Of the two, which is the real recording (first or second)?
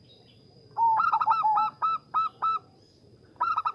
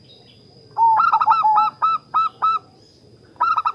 second